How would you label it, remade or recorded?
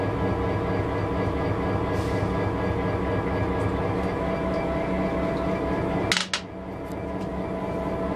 recorded